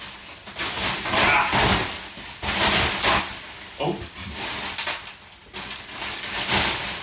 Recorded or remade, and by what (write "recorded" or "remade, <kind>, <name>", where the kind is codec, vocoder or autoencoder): recorded